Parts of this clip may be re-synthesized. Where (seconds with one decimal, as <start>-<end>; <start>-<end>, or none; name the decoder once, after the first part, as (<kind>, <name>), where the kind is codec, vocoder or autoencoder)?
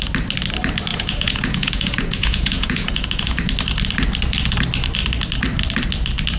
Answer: 0.9-3.4 (vocoder, Vocos)